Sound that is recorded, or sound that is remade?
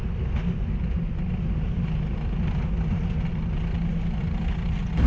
recorded